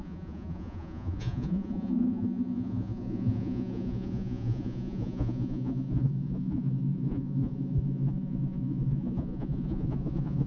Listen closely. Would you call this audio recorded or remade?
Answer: remade